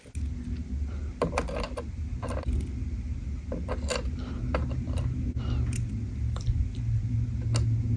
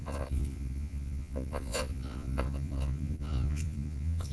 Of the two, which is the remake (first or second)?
second